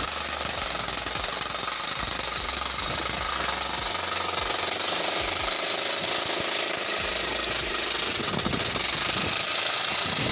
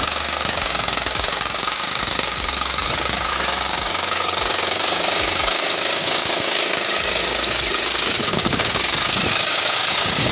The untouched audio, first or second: first